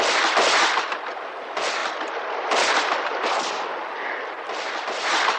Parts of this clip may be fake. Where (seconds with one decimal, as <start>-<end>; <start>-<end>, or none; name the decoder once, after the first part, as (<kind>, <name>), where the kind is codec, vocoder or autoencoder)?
none